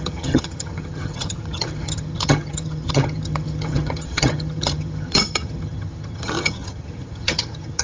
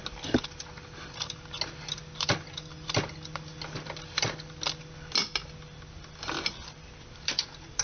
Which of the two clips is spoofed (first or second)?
first